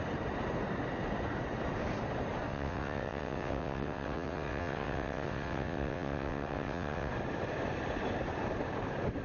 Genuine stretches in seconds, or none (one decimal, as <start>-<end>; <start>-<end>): 0.0-2.5; 7.1-9.2